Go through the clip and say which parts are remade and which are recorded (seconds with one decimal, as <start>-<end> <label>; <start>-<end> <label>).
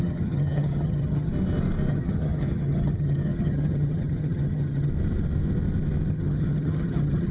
0.0-1.3 remade; 1.3-1.9 recorded; 1.9-4.9 remade; 4.9-6.1 recorded; 6.1-7.3 remade